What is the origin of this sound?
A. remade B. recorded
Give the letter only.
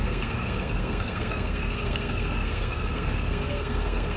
A